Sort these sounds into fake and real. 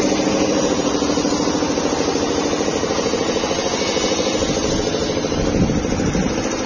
real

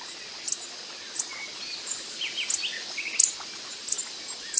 real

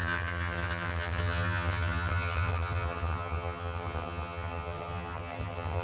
fake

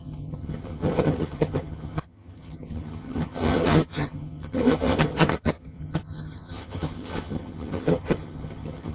fake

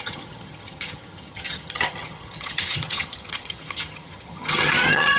fake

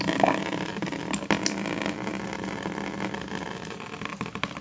real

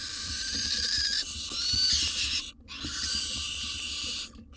real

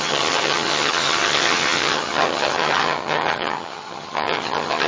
fake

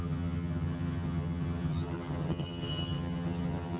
fake